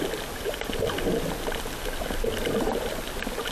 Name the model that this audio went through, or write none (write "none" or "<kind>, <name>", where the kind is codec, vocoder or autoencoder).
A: none